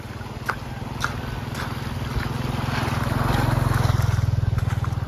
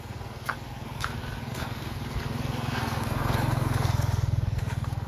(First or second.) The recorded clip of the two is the first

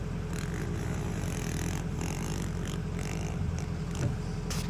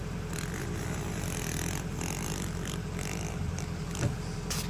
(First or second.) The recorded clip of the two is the first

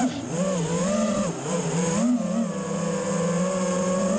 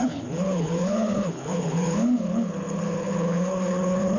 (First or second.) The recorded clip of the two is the first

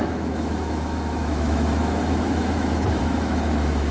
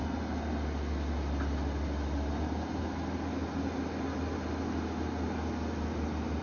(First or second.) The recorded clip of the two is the second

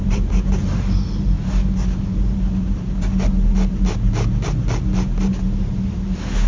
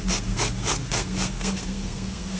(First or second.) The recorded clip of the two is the first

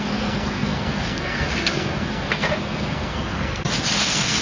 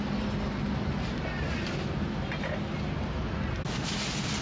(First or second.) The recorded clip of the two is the second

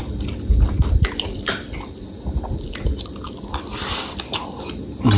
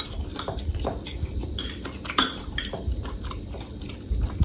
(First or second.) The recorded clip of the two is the first